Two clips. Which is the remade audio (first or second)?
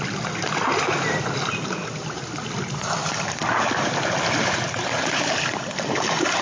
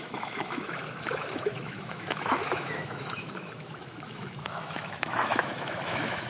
second